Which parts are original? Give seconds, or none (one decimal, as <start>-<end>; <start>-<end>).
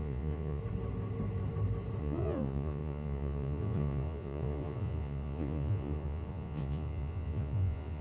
0.6-2.0